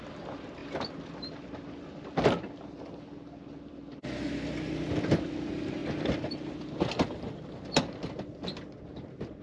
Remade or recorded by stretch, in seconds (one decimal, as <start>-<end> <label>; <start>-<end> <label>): 0.0-9.4 recorded